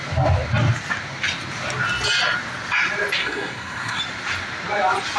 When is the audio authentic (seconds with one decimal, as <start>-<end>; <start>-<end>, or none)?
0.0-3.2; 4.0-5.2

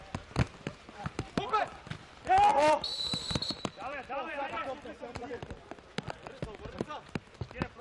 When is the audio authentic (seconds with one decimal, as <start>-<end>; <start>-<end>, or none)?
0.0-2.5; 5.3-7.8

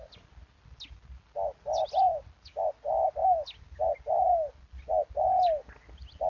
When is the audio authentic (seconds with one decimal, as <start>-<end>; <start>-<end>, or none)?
0.0-6.3